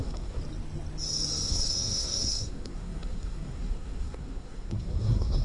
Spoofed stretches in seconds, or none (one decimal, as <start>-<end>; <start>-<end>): 0.0-0.4; 1.5-5.4